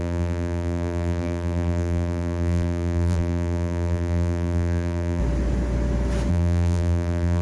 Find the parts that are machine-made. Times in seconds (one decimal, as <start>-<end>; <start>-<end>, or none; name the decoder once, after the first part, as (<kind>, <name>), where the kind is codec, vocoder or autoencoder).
0.0-5.2 (vocoder, BigVGAN v2); 6.3-7.4